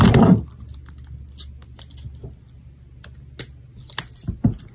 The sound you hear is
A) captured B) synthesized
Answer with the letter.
A